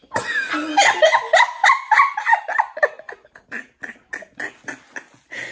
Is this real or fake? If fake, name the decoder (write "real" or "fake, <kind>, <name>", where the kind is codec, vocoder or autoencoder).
real